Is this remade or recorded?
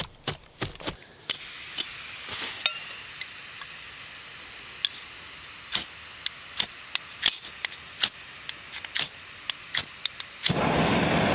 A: recorded